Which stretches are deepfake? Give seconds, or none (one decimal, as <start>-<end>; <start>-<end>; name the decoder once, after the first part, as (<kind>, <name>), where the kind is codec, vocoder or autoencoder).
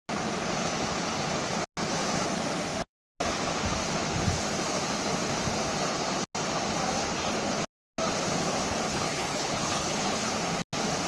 8.9-10.3 (codec, HILCodec)